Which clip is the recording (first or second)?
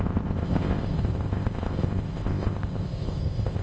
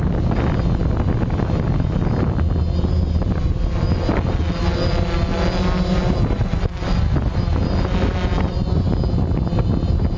second